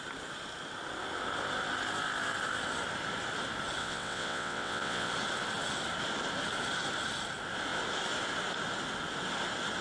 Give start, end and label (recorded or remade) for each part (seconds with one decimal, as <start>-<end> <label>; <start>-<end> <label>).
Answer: 0.0-3.8 recorded; 3.8-5.1 remade; 5.1-9.8 recorded